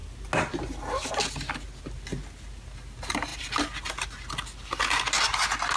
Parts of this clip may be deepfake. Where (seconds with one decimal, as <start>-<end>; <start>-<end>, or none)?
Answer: 3.3-3.9